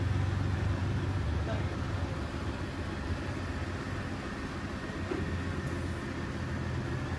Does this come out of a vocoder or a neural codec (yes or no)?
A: no